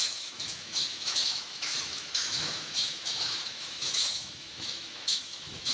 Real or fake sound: fake